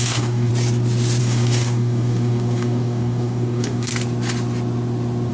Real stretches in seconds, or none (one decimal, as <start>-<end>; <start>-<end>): 0.5-1.2; 3.9-5.3